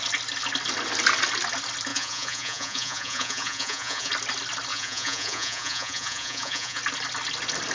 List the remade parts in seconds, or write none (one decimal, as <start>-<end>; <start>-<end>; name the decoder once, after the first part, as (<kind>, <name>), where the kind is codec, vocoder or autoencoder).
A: 1.9-4.1 (vocoder, Vocos); 4.7-6.8